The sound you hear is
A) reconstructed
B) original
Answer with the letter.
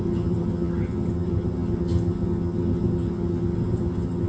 A